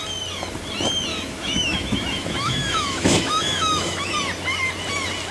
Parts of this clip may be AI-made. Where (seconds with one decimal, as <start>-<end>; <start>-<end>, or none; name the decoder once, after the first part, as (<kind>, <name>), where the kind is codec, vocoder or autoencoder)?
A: 1.1-4.1 (autoencoder, DAC-VAE)